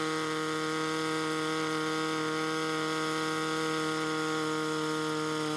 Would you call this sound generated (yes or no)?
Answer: no